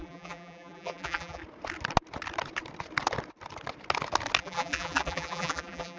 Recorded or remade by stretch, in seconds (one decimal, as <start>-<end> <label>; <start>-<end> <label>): 0.0-1.4 remade; 1.4-4.4 recorded; 4.4-6.0 remade